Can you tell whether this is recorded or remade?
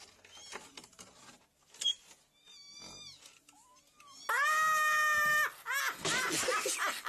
recorded